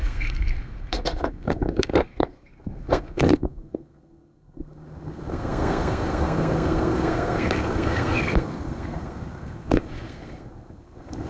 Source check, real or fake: fake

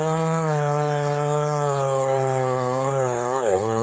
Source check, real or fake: fake